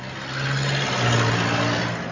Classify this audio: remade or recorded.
recorded